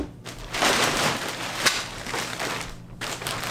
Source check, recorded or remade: recorded